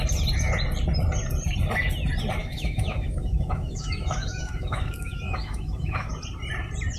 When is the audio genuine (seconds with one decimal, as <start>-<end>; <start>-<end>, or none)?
0.0-2.4; 6.1-7.0